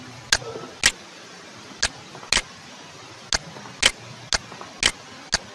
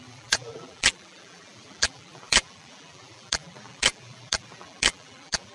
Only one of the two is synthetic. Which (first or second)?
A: second